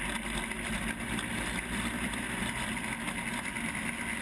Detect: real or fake real